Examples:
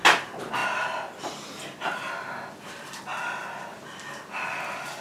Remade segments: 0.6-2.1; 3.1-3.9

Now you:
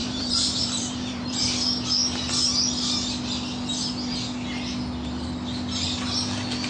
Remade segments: 0.0-1.4

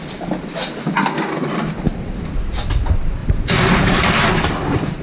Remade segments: 3.2-4.5

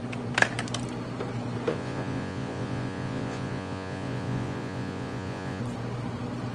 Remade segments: 1.7-5.6

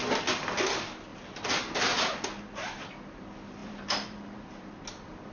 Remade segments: 3.6-4.7